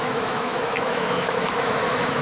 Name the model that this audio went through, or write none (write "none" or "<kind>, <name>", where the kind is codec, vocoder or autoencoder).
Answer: autoencoder, DAC-VAE